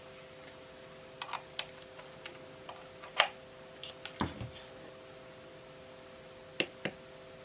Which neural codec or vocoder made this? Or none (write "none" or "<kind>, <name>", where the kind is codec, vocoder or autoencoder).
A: none